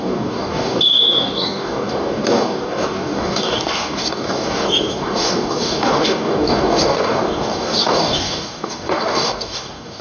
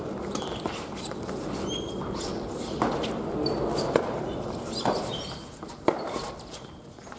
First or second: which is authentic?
second